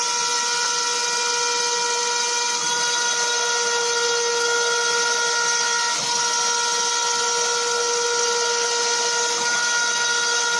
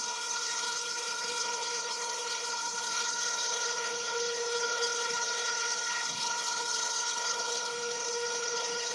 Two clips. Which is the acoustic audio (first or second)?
first